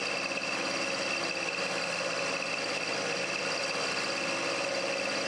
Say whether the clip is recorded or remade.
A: recorded